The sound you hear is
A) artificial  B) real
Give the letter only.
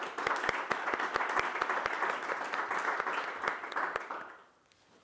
B